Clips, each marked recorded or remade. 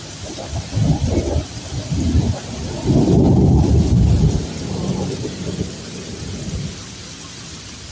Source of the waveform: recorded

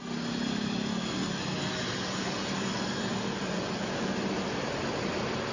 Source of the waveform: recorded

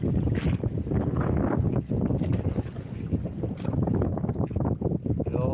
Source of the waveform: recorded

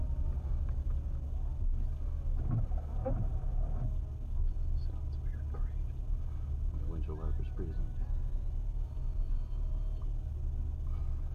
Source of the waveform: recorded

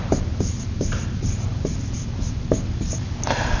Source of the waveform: remade